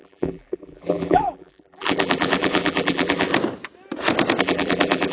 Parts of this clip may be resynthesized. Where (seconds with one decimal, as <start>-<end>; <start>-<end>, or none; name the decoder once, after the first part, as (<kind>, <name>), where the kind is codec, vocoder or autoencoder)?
0.0-3.3 (vocoder, BigVGAN v2); 4.4-5.1